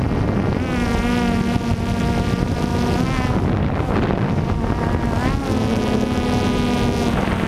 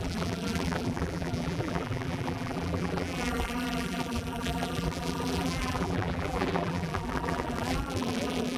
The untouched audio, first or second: first